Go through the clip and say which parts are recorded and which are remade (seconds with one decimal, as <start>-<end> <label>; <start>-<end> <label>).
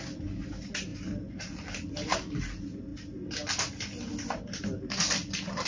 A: 0.0-5.7 recorded